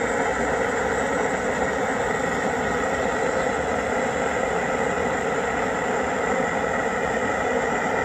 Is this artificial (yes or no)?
no